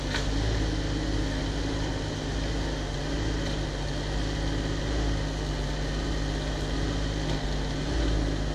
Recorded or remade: recorded